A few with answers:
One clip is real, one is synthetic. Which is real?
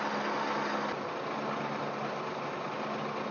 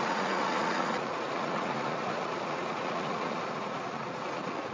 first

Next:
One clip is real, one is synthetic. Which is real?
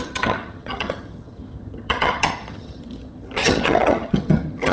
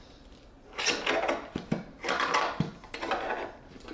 second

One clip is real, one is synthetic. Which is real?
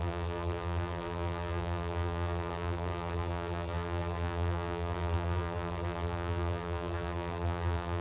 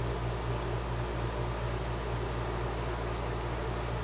second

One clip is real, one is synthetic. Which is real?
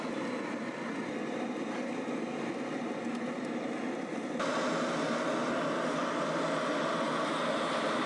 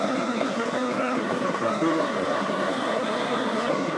first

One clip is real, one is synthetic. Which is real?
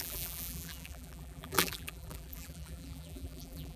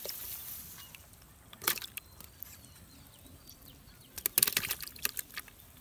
second